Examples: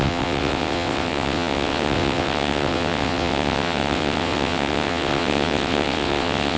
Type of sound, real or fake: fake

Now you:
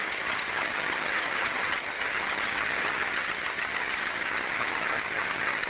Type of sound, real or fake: fake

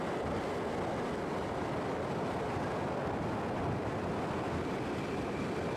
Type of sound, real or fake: real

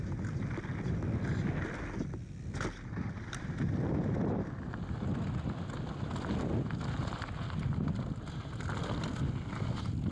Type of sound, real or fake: real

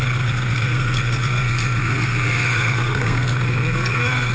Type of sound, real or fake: fake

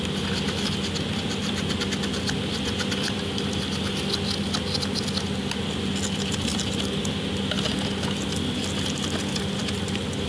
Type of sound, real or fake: real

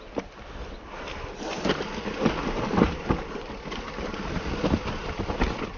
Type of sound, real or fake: real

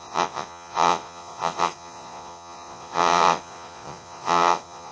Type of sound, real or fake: fake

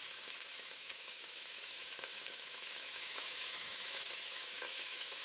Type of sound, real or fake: fake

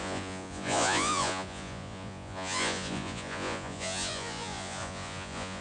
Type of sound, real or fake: fake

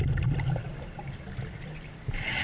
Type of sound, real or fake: real